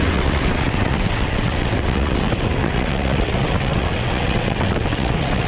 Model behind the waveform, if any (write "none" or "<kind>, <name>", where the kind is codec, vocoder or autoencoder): vocoder, WaveNeXt